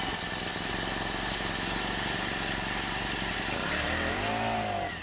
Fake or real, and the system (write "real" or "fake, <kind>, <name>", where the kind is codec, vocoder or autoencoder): real